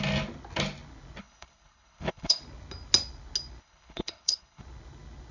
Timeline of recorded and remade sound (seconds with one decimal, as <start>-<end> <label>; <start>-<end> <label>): 0.0-1.2 recorded; 1.2-2.4 remade; 2.4-3.6 recorded; 3.6-4.6 remade; 4.6-5.3 recorded